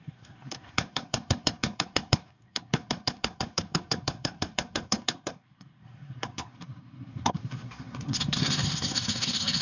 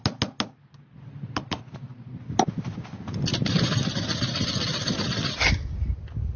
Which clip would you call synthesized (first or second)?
first